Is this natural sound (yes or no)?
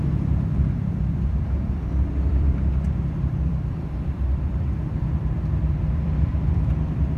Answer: no